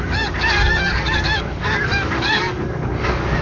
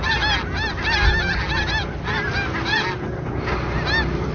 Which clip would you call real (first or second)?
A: second